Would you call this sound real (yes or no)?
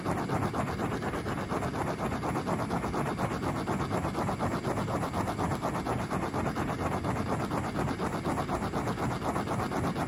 yes